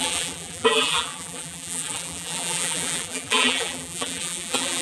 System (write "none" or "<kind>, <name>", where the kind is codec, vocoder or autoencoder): vocoder, BigVGAN v2